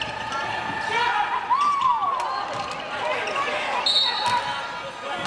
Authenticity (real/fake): real